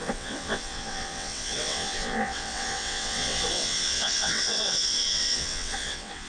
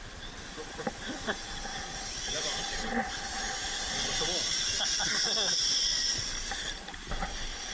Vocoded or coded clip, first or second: first